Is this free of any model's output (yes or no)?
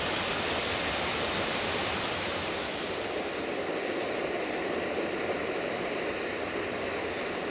yes